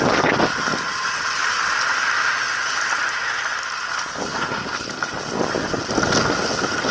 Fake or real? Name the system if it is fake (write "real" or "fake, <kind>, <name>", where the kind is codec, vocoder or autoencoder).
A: real